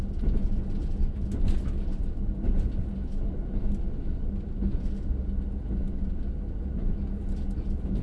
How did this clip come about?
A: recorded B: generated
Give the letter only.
A